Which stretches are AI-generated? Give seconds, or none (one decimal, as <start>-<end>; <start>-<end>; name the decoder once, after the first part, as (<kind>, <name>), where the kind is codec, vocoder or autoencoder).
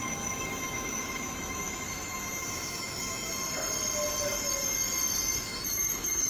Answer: 0.0-3.3 (autoencoder, DAC-VAE); 5.5-6.3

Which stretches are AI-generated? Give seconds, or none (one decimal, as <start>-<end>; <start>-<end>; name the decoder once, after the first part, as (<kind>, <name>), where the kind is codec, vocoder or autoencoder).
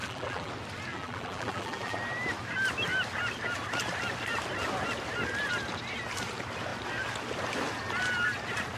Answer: 0.0-0.5 (vocoder, BigVGAN v2); 0.9-2.0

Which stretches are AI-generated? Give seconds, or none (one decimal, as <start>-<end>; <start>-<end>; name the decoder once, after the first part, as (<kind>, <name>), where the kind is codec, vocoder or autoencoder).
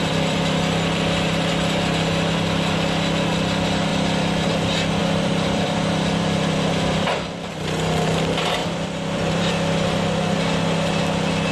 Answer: 0.0-1.5 (vocoder, BigVGAN v2); 3.9-4.5; 5.0-7.5; 8.6-9.5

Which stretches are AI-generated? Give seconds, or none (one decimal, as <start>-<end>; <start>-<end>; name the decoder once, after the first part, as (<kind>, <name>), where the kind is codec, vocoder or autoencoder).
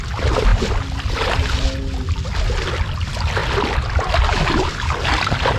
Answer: none